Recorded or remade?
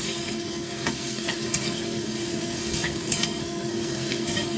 remade